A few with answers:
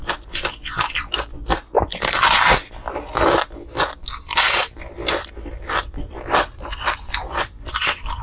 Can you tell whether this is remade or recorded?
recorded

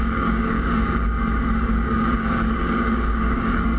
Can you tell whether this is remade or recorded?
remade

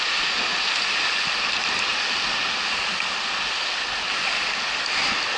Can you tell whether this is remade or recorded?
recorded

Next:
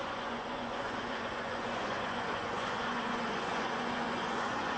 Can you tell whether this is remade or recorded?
remade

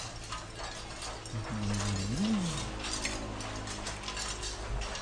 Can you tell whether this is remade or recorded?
recorded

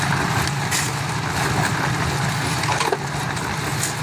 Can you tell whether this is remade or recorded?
recorded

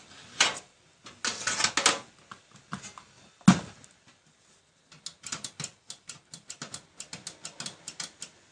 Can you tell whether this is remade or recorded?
recorded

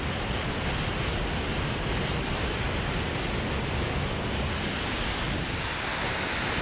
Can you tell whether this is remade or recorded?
recorded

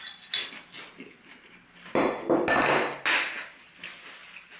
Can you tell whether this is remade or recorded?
recorded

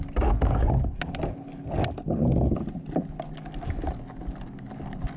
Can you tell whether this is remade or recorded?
recorded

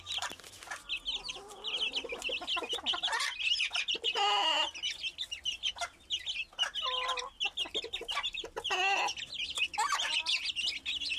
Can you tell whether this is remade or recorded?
recorded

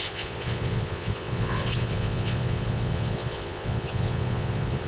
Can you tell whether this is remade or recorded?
remade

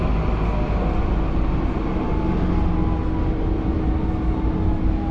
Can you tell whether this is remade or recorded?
recorded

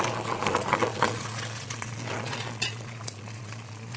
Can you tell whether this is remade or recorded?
remade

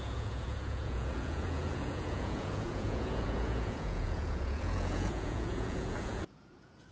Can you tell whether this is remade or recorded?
remade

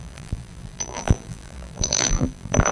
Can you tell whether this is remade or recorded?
remade